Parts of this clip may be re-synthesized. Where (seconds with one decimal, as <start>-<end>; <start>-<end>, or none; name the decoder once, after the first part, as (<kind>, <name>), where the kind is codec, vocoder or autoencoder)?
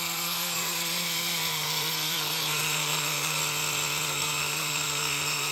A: 0.0-3.4 (codec, SNAC); 4.1-5.5